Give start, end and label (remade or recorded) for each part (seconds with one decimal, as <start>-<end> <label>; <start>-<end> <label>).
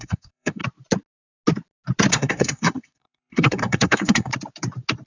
0.0-0.6 remade; 0.6-2.1 recorded; 2.1-4.3 remade; 4.3-5.1 recorded